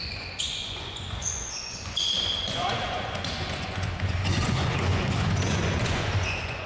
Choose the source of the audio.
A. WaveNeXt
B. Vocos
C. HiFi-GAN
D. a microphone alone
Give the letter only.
B